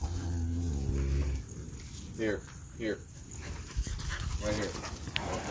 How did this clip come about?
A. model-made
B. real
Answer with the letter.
B